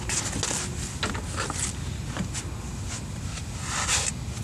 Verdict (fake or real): real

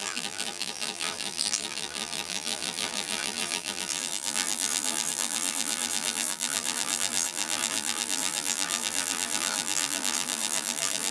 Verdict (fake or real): fake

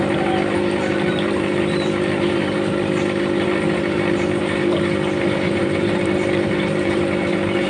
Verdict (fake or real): fake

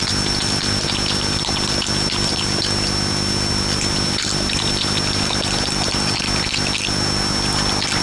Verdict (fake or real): fake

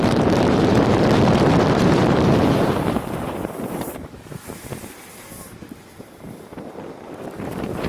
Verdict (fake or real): fake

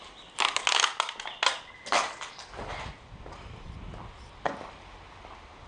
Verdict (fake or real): real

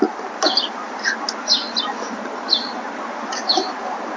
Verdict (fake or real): real